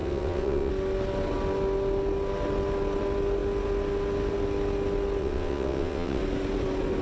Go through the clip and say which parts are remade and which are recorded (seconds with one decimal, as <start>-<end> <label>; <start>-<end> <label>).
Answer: 0.0-0.7 remade; 0.7-5.2 recorded; 5.2-6.2 remade; 6.2-7.0 recorded